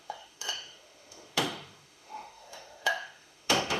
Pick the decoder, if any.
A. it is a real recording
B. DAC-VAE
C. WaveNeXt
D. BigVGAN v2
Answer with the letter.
B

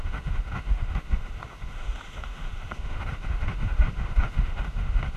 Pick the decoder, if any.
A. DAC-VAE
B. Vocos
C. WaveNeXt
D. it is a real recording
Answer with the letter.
A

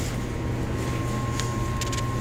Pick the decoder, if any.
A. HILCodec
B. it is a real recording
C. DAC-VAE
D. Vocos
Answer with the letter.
B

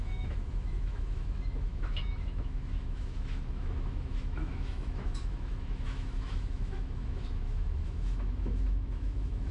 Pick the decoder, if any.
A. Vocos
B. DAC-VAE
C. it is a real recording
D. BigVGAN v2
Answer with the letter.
B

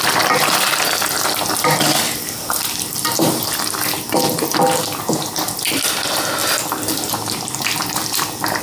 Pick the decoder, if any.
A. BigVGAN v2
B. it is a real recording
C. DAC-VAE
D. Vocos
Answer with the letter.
B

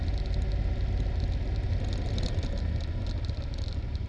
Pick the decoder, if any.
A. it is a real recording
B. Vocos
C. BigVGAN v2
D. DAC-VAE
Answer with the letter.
A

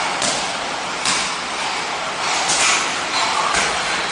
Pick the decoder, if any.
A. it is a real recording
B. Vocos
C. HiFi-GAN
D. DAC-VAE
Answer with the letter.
A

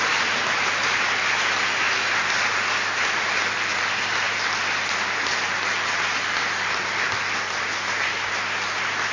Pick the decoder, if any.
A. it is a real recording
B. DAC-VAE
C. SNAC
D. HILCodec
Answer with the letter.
A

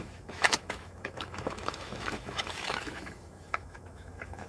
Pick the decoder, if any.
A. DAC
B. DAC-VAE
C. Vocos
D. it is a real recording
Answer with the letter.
B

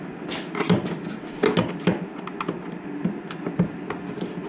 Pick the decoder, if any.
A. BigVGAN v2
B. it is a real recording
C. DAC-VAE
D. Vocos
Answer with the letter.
B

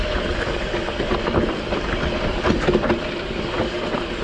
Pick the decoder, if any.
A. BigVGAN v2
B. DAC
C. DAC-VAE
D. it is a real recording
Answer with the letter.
D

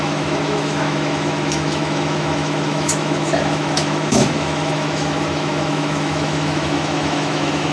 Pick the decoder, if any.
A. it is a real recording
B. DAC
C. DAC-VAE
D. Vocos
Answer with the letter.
C